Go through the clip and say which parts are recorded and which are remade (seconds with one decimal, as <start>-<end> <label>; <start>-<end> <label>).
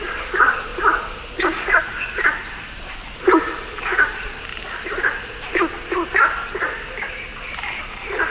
0.0-0.7 remade; 0.7-1.4 recorded; 1.4-4.5 remade; 4.5-7.8 recorded; 7.8-8.3 remade